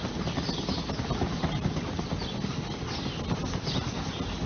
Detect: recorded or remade recorded